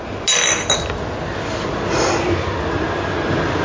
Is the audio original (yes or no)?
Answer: yes